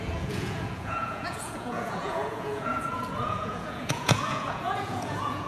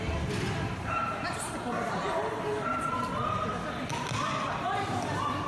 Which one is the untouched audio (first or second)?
second